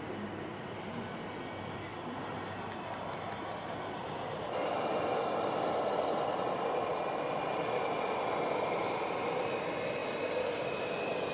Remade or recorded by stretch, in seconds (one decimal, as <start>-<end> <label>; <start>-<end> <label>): 0.0-11.3 recorded